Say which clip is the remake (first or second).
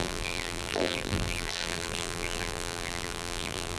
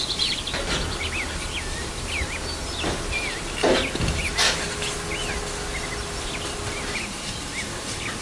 first